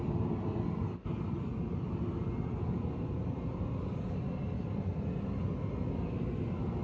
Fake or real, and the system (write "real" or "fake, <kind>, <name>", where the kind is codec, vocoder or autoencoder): real